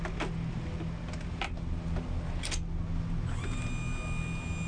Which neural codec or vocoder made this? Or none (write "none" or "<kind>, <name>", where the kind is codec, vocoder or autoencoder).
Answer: none